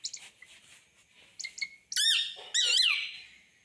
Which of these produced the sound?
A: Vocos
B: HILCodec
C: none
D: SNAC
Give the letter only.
C